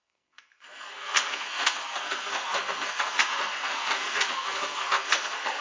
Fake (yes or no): yes